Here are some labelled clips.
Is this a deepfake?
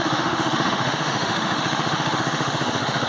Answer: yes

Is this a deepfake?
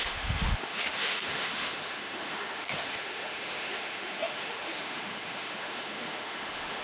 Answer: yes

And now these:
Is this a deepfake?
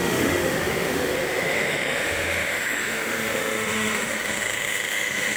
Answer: yes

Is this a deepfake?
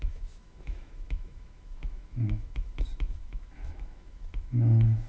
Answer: yes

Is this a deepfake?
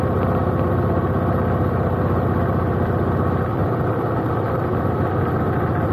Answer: no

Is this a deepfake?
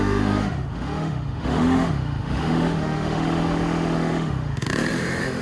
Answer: yes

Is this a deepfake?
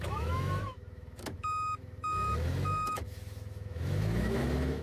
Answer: yes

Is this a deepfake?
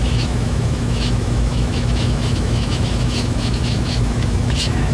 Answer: yes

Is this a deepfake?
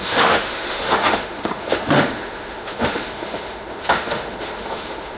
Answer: yes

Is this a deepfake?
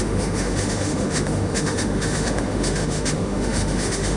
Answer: yes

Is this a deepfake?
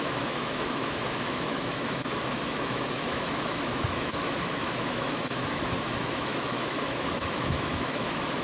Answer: yes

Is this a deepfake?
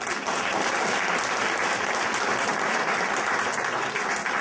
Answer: no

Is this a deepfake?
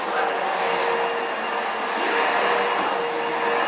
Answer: no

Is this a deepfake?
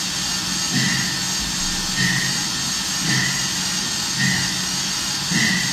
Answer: no